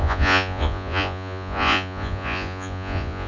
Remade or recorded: remade